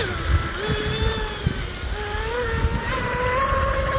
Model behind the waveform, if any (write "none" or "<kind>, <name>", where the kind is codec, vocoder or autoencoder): none